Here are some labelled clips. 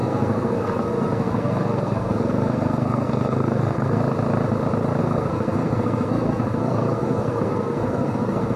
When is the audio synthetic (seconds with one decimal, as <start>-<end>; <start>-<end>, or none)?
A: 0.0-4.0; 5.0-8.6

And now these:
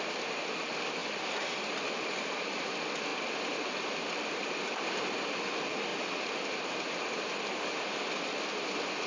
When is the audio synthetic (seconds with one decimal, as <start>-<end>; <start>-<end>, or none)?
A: 0.0-9.1

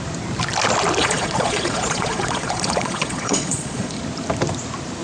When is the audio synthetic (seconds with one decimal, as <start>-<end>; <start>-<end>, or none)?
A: 1.0-4.0

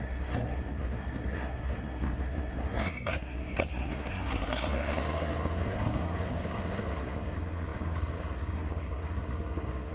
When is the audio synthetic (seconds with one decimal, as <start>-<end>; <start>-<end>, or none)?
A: 0.0-9.9

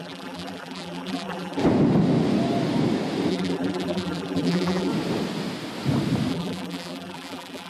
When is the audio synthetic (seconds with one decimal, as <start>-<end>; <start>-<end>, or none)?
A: 0.0-1.6; 3.3-4.9; 6.3-7.7